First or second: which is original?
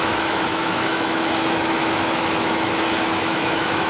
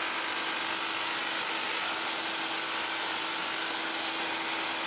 second